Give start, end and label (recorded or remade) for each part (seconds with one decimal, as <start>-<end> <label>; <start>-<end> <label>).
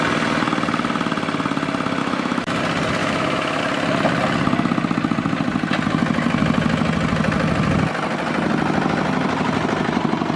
0.0-2.0 recorded; 2.0-2.6 remade; 2.6-3.0 recorded; 3.0-3.6 remade; 3.6-10.4 recorded